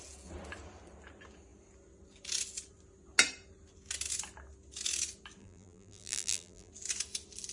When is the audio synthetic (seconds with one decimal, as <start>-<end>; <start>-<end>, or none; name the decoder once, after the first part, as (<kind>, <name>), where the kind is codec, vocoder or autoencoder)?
5.4-6.7 (vocoder, BigVGAN v2)

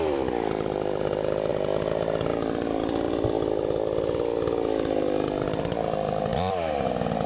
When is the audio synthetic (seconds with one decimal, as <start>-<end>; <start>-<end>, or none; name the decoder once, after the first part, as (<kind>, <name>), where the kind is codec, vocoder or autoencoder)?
0.0-1.5 (vocoder, BigVGAN v2); 5.6-6.3

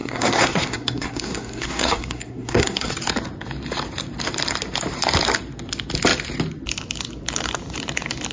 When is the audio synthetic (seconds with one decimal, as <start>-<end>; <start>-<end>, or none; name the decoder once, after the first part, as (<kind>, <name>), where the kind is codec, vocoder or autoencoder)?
0.0-2.9 (codec, SNAC)

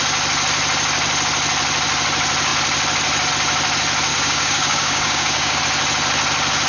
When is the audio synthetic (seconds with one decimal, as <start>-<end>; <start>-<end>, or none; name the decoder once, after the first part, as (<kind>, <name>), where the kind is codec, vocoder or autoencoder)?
4.1-5.6 (codec, DAC)